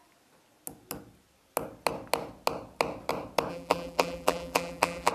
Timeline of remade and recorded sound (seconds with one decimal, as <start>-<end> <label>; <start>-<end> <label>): 0.0-3.5 recorded; 3.5-5.1 remade